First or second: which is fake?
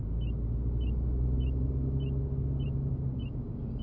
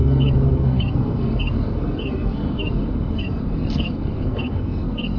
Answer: second